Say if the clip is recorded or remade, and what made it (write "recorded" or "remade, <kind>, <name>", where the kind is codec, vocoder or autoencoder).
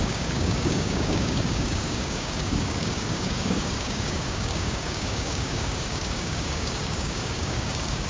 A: remade, codec, DAC